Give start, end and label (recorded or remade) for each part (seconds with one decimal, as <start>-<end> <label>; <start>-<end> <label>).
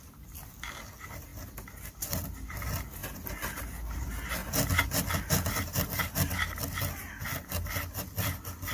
0.0-8.7 recorded